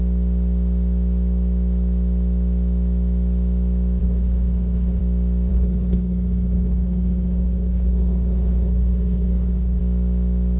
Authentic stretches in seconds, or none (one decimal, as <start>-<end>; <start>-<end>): 0.0-4.0; 5.0-5.5; 9.8-10.6